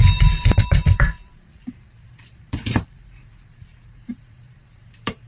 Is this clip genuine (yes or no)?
no